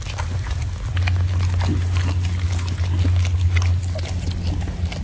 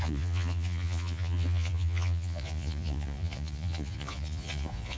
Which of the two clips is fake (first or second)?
second